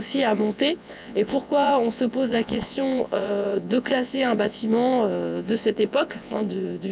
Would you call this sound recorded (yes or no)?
no